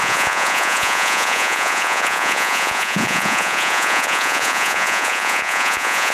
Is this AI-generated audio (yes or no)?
yes